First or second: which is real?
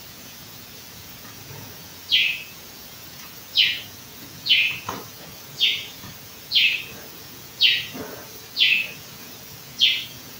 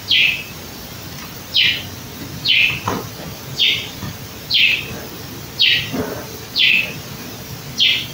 second